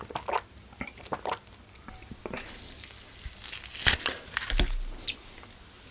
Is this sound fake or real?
real